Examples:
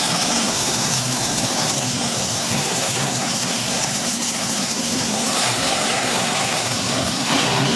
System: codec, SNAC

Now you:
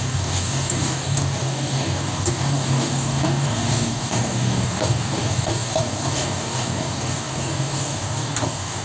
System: codec, DAC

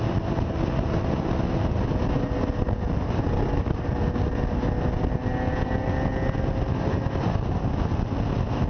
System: none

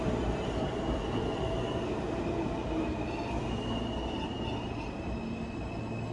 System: none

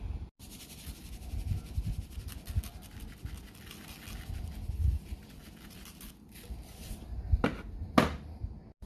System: none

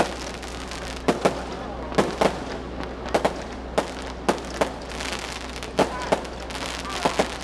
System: none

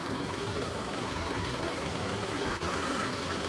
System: codec, SNAC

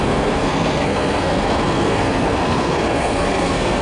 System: codec, SNAC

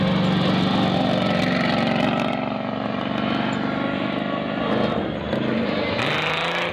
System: none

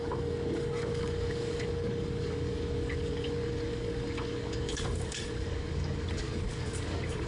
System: codec, DAC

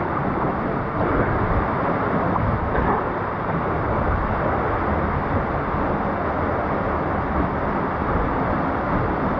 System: none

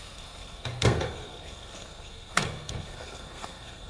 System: codec, SNAC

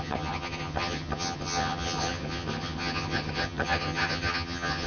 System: vocoder, HiFi-GAN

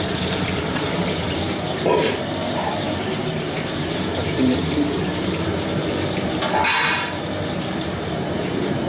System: vocoder, BigVGAN v2